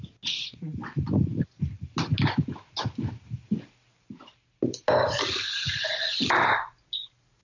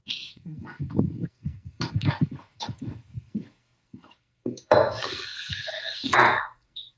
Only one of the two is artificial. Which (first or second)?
second